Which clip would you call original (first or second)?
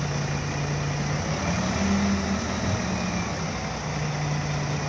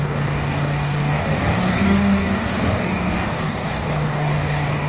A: first